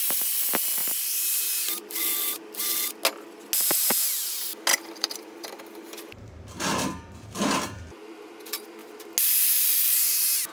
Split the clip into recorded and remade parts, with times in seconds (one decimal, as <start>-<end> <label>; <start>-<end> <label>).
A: 0.0-0.8 recorded; 0.8-2.1 remade; 2.1-4.7 recorded; 4.7-6.1 remade; 6.1-10.5 recorded